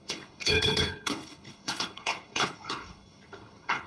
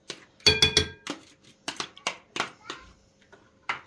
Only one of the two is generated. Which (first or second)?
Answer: first